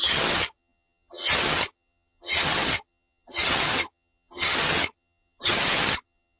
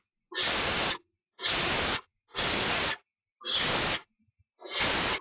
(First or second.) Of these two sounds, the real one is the second